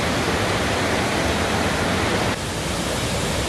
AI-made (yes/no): no